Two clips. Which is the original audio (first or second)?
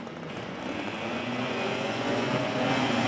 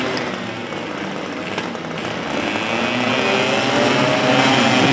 second